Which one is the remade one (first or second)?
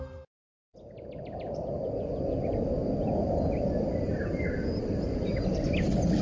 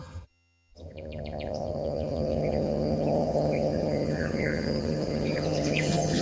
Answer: second